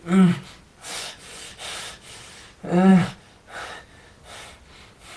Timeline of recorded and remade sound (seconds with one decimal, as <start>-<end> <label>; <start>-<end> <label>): 0.0-0.7 recorded; 0.7-1.4 remade; 1.4-2.9 recorded; 2.9-3.6 remade; 3.6-5.2 recorded